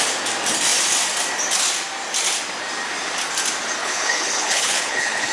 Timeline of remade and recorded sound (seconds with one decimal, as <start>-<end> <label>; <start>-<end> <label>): 0.0-3.8 recorded; 3.8-5.3 remade